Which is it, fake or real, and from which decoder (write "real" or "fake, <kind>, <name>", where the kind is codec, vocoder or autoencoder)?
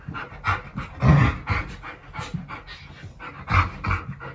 real